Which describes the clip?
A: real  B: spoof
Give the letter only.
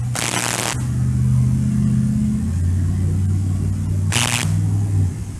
A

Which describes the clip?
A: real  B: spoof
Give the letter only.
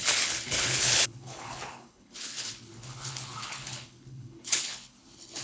B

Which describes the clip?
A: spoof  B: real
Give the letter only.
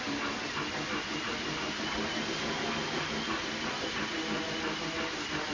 B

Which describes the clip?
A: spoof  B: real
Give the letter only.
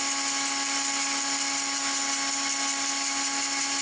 B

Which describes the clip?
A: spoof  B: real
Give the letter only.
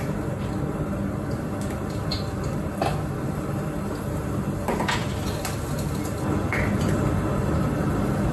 B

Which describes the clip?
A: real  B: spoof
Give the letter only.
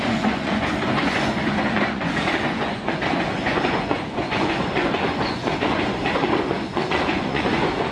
B